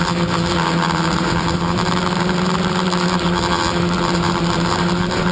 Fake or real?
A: fake